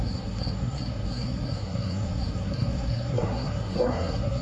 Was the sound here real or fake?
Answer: fake